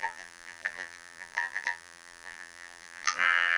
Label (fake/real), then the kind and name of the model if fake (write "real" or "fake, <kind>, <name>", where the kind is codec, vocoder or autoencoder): fake, vocoder, BigVGAN v2